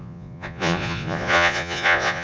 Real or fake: fake